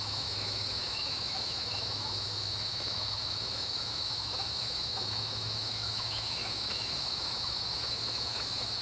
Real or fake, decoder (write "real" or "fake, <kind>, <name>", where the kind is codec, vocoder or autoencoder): fake, autoencoder, DAC-VAE